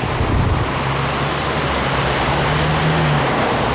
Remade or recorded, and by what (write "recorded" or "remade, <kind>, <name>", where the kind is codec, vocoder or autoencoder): recorded